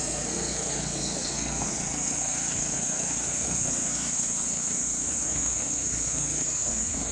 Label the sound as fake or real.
fake